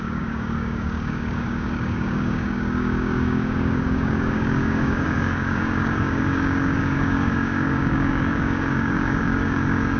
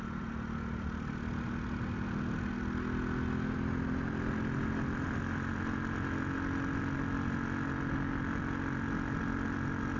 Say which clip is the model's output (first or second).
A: first